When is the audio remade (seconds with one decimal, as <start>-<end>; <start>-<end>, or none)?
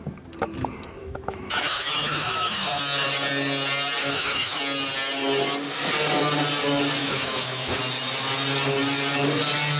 1.0-2.8; 4.0-4.6; 7.0-7.8